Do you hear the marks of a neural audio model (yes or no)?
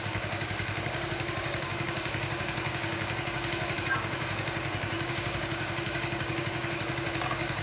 yes